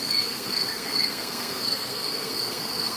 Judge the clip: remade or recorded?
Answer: remade